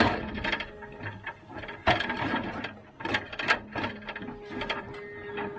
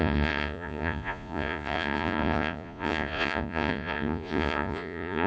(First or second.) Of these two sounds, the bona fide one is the first